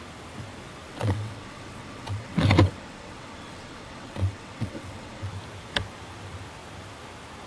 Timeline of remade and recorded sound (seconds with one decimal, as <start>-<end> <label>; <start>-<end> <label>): 0.0-0.9 recorded; 0.9-5.3 remade; 5.3-7.5 recorded